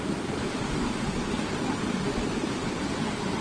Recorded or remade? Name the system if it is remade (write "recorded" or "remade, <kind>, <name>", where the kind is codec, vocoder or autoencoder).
recorded